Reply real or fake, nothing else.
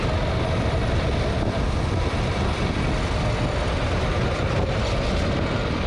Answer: real